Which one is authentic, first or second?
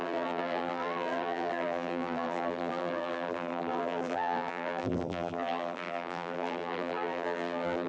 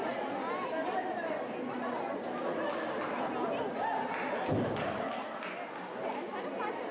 second